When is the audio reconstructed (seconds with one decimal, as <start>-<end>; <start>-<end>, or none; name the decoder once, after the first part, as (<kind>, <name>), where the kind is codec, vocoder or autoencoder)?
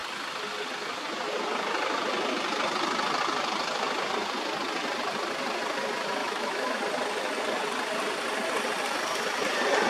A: 6.2-6.8 (autoencoder, DAC-VAE)